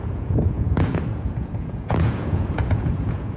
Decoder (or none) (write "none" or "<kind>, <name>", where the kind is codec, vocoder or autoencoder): vocoder, Vocos